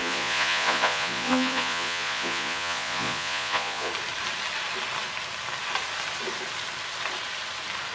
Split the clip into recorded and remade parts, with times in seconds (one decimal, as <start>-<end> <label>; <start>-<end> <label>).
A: 0.0-3.9 remade; 3.9-7.9 recorded